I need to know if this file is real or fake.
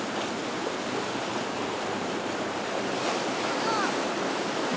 fake